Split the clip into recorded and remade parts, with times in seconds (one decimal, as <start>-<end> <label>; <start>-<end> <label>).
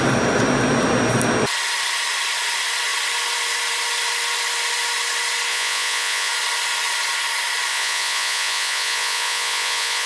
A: 0.0-5.5 recorded; 5.5-6.3 remade; 6.3-7.7 recorded; 7.7-10.1 remade